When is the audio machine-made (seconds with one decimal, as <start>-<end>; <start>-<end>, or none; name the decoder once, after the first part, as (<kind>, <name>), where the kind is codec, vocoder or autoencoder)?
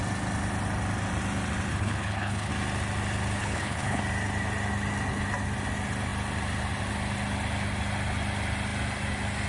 1.7-2.5 (codec, HILCodec); 3.4-4.0